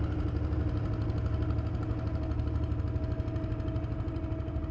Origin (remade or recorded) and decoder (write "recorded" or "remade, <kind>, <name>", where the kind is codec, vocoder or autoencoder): recorded